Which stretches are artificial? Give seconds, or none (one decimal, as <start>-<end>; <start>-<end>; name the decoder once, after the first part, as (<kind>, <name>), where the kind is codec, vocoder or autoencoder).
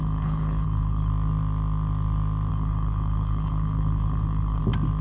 0.0-1.1 (codec, HILCodec); 2.5-4.6